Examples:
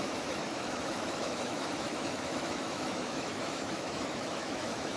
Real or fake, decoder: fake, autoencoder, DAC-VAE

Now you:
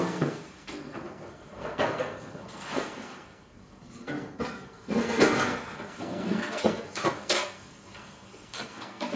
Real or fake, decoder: fake, codec, SNAC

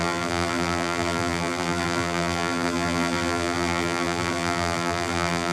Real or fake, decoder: fake, vocoder, BigVGAN v2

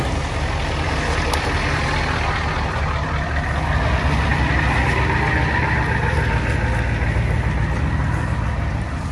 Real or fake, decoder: real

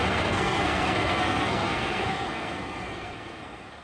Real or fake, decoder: fake, codec, SNAC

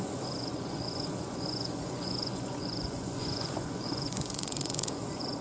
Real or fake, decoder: fake, vocoder, Vocos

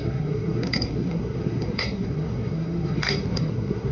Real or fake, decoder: fake, codec, SNAC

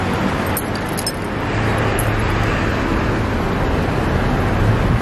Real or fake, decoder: real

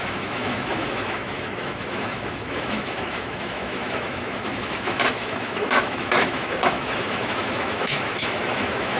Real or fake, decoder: fake, autoencoder, DAC-VAE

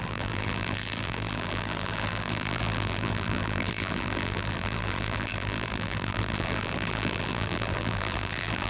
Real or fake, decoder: fake, vocoder, BigVGAN v2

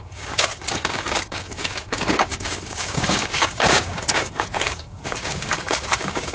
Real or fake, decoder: fake, codec, DAC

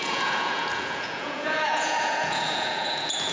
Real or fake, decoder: fake, vocoder, Vocos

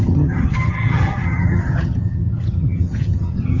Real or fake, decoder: fake, vocoder, HiFi-GAN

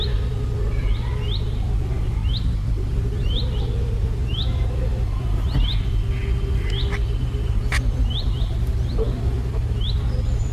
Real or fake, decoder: real